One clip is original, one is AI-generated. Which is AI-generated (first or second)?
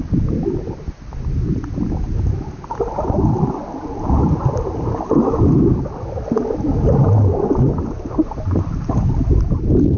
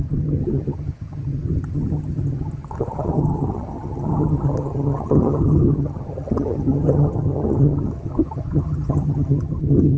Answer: second